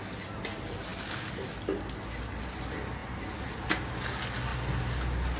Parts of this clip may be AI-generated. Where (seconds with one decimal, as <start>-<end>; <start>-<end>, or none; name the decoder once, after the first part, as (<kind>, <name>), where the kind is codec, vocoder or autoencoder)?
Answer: none